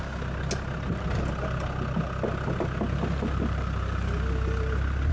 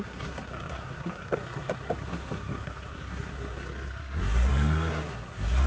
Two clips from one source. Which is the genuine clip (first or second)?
first